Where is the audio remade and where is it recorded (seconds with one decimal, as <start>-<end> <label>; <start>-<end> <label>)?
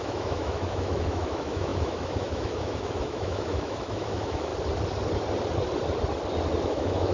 0.0-4.5 remade; 4.5-6.6 recorded; 6.6-7.1 remade